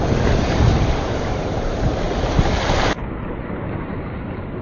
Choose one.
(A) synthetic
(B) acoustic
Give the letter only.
A